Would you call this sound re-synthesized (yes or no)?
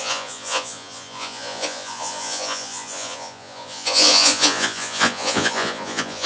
yes